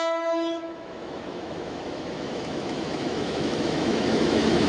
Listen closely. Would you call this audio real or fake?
fake